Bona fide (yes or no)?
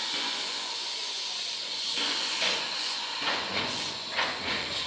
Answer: no